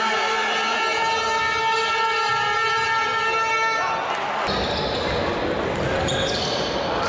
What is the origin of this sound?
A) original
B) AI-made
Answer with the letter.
A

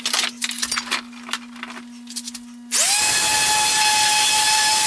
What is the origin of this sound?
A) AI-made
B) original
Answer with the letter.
B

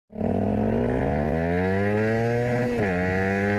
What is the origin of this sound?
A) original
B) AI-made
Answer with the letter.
A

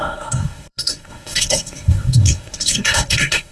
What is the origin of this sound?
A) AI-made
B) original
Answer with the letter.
A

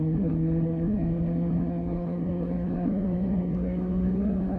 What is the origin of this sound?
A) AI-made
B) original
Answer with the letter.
A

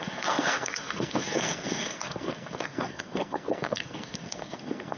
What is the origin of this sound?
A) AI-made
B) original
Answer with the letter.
A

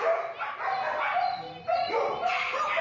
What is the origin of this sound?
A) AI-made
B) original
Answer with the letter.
B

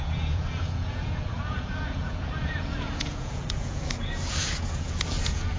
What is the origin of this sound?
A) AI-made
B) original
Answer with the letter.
A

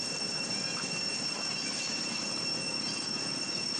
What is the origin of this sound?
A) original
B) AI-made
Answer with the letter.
A